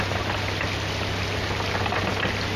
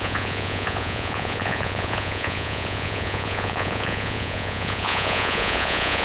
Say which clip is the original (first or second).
first